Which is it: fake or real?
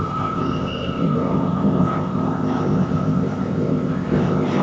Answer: fake